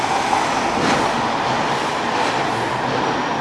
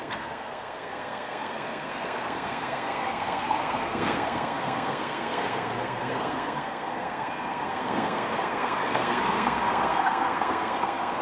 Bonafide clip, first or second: first